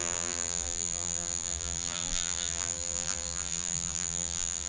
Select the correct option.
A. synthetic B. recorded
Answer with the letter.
A